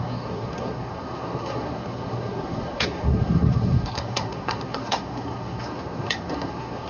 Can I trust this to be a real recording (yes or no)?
no